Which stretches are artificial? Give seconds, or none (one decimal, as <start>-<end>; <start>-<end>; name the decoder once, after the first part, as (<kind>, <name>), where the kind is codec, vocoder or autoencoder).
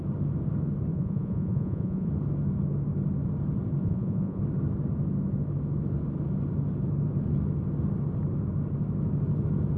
0.9-2.1 (vocoder, Vocos); 3.8-4.4